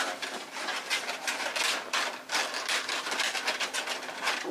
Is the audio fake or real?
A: real